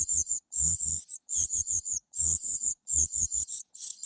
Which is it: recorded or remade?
remade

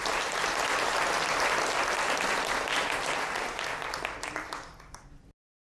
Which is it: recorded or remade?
recorded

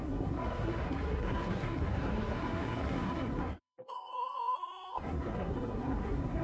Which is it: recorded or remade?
remade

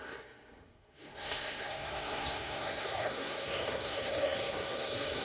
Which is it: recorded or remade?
remade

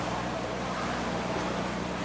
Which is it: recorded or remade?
recorded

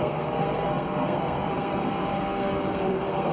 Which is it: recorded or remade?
remade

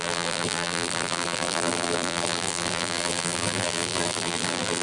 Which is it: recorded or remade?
remade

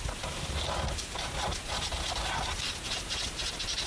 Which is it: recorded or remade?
recorded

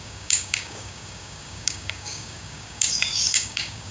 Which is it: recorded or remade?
remade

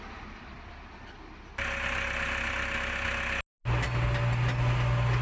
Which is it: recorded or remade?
recorded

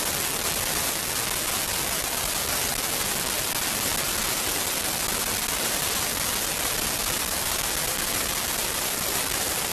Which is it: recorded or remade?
recorded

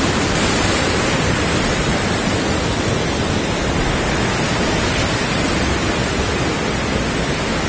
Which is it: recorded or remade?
recorded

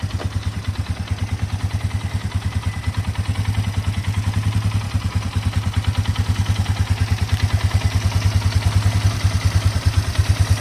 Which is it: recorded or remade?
recorded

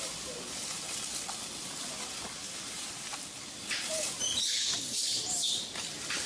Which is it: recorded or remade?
remade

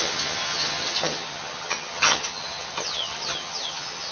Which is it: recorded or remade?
remade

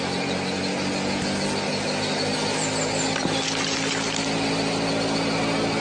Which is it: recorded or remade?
recorded